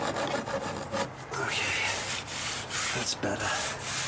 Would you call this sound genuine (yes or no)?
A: yes